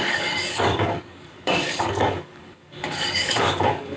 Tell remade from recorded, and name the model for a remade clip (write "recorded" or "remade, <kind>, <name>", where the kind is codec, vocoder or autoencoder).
remade, codec, DAC